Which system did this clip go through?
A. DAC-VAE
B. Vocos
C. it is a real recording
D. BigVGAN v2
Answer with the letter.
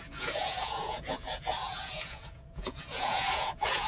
B